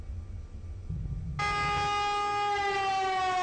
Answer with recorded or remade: recorded